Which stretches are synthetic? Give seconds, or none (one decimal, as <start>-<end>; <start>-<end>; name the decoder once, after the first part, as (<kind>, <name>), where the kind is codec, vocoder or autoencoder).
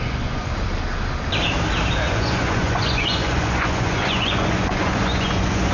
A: 0.0-0.5 (vocoder, Vocos); 1.9-5.7